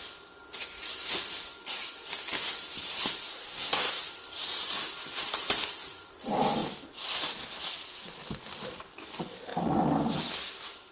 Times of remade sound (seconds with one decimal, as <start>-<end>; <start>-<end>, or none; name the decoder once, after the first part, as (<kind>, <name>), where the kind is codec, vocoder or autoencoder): 3.3-4.0 (codec, SNAC)